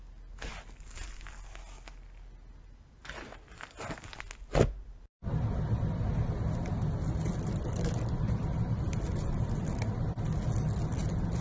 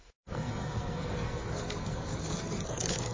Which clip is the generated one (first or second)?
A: second